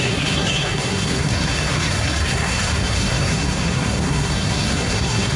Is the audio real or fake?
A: fake